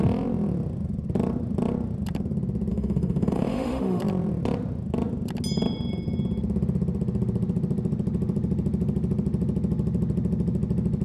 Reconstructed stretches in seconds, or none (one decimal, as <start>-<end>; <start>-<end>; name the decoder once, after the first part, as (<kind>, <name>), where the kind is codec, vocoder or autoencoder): 2.7-4.0 (autoencoder, DAC-VAE)